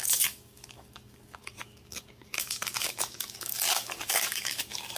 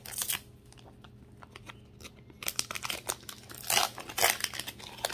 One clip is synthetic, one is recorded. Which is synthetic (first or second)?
first